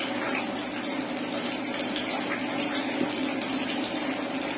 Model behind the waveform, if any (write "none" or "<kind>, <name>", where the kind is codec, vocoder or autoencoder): none